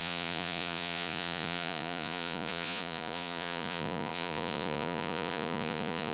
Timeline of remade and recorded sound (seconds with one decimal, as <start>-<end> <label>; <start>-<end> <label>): 0.0-6.1 remade